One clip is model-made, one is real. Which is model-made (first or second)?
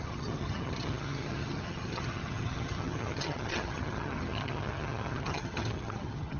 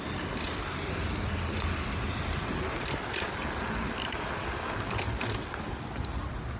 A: first